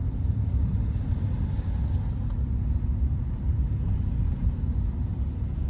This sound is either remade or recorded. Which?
recorded